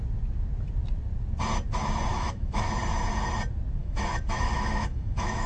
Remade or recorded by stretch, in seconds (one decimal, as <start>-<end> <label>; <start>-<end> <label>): 0.0-2.1 recorded; 2.1-2.8 remade; 2.8-3.8 recorded; 3.8-5.5 remade